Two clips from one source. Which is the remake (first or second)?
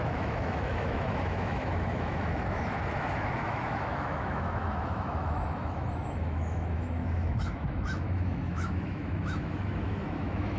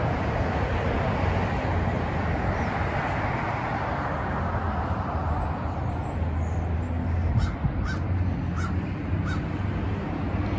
first